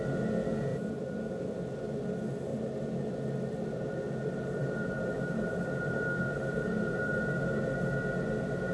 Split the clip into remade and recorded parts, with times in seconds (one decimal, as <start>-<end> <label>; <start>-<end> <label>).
0.0-0.7 recorded; 0.7-1.3 remade; 1.3-2.5 recorded; 2.5-3.1 remade; 3.1-4.6 recorded; 4.6-7.6 remade; 7.6-8.7 recorded